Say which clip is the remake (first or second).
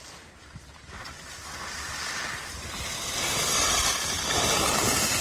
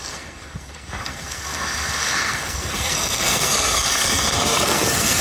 second